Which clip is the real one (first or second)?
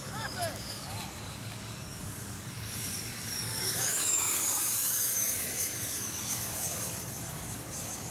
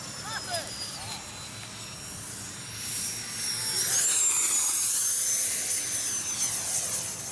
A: second